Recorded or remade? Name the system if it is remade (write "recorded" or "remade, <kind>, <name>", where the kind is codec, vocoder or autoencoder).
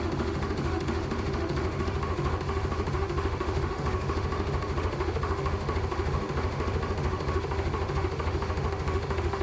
remade, autoencoder, DAC-VAE